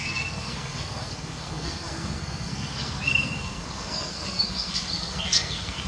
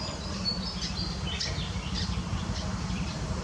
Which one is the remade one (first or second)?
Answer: first